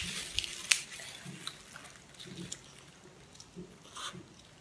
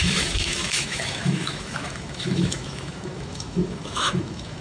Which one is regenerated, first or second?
second